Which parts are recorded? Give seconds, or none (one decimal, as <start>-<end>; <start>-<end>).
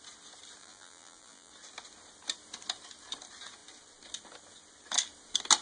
0.0-0.6; 1.5-5.6